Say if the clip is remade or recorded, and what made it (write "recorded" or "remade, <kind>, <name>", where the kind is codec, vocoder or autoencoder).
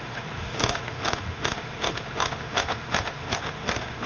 remade, autoencoder, DAC-VAE